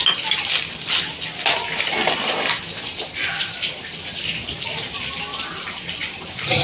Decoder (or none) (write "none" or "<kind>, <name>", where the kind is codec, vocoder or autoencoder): none